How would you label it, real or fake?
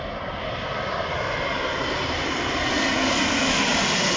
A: fake